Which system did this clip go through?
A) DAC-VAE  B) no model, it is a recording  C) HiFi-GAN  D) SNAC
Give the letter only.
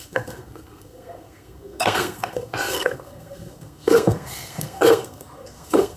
D